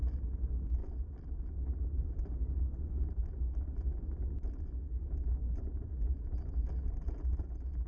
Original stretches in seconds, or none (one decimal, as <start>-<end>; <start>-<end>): 0.0-5.4; 6.1-7.9

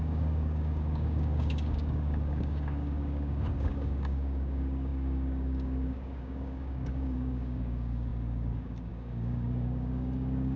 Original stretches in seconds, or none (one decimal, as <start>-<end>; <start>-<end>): none

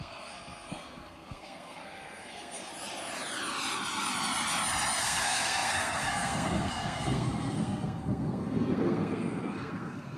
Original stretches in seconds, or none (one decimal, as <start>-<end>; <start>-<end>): 2.7-5.0

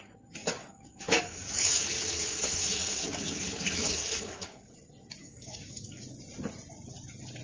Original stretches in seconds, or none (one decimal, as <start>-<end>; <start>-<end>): 0.0-0.4; 4.7-5.2; 6.0-7.4